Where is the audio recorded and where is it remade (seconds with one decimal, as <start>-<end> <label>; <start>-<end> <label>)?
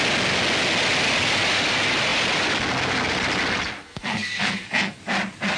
0.0-3.8 recorded; 3.8-5.0 remade; 5.0-5.6 recorded